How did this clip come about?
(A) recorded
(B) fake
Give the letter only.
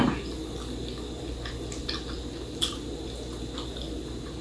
A